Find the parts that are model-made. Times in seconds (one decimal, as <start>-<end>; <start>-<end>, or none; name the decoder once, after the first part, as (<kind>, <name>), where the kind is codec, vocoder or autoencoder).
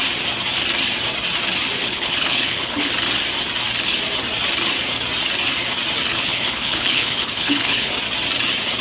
1.8-2.9 (codec, HILCodec); 6.1-7.9